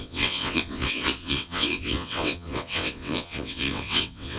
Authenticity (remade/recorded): remade